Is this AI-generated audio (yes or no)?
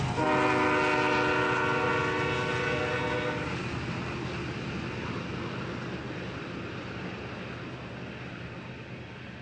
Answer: no